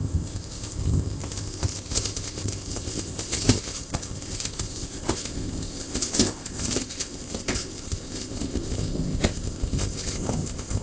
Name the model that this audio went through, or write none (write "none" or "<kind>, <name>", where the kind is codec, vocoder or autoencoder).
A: codec, ZipCodec